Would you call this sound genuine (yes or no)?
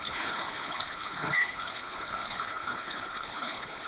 no